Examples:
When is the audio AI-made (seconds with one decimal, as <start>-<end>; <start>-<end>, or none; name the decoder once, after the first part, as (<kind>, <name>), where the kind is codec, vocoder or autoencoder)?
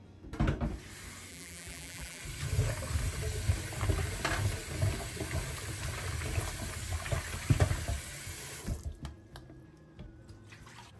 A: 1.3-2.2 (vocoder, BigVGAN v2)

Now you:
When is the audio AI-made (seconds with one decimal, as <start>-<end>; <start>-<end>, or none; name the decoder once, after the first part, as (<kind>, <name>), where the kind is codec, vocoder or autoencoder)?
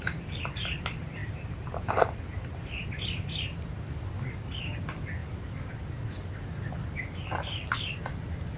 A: none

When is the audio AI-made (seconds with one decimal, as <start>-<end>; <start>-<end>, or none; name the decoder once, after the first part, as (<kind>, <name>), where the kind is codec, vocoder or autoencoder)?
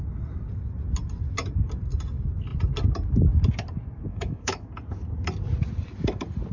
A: 4.1-4.7 (autoencoder, DAC-VAE)